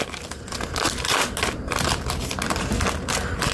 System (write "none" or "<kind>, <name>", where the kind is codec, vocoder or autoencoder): none